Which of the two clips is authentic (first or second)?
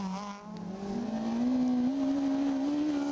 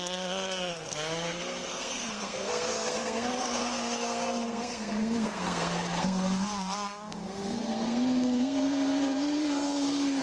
first